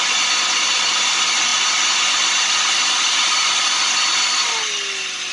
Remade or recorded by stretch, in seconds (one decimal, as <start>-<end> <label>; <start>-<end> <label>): 0.0-5.3 recorded